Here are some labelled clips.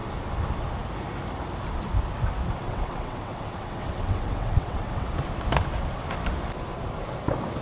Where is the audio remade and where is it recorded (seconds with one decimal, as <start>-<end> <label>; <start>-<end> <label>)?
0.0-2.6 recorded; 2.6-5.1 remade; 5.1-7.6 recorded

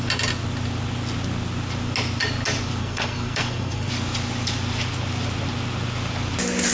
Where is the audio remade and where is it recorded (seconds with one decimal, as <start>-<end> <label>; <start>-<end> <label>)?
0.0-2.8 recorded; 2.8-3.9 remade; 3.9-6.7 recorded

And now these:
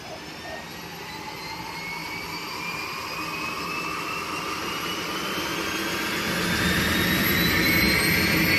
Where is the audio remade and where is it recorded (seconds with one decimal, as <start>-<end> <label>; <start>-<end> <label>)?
0.0-2.0 recorded; 2.0-3.4 remade; 3.4-8.6 recorded